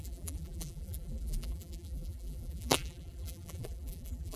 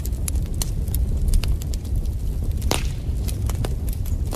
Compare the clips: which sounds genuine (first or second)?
second